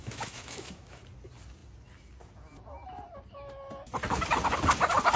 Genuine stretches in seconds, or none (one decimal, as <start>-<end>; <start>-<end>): 1.0-5.2